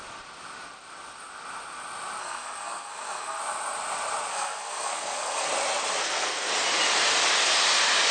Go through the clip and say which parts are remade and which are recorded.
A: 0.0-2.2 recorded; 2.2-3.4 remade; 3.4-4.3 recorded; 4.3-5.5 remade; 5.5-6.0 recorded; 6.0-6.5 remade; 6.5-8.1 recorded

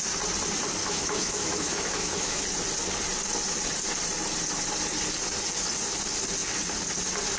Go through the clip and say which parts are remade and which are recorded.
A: 0.0-0.8 recorded; 0.8-2.4 remade; 2.4-7.4 recorded

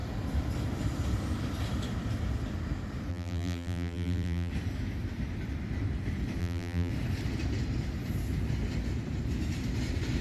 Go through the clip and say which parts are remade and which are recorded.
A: 0.0-3.1 recorded; 3.1-4.5 remade; 4.5-6.4 recorded; 6.4-6.9 remade; 6.9-10.2 recorded

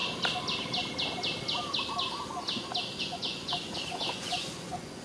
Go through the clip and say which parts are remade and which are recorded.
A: 0.0-3.0 recorded; 3.0-5.0 remade

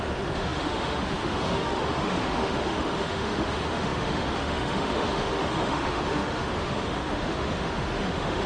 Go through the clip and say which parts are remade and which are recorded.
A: 0.0-8.5 remade

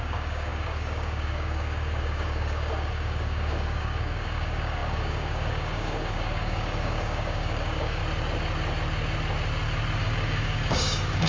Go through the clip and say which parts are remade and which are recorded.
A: 0.0-8.0 remade; 8.0-10.0 recorded; 10.0-11.3 remade

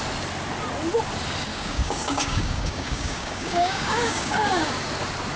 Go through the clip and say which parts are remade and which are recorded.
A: 0.0-1.5 recorded; 1.5-4.7 remade; 4.7-5.4 recorded

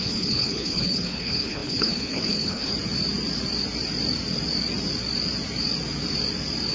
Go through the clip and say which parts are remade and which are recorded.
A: 0.0-2.7 remade; 2.7-6.7 recorded